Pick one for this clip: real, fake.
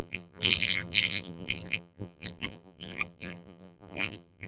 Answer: fake